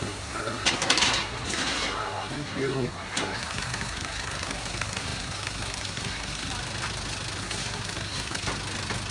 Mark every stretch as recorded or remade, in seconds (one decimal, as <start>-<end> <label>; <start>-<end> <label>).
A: 0.0-6.5 remade; 6.5-7.4 recorded; 7.4-8.5 remade; 8.5-9.1 recorded